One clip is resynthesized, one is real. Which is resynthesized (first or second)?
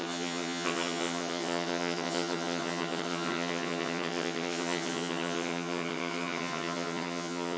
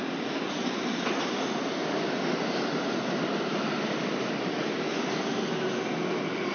first